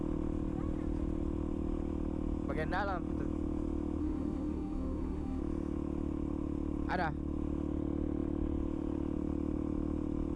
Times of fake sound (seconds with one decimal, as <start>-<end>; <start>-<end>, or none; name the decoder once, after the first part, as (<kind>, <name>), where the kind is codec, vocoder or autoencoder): 4.0-5.4 (autoencoder, DAC-VAE)